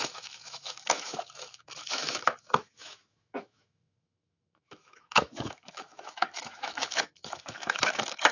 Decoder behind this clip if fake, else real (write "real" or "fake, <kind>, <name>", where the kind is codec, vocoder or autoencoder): fake, autoencoder, DAC-VAE